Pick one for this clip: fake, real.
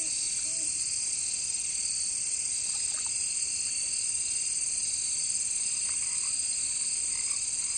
real